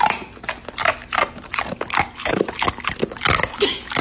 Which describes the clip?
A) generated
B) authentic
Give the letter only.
B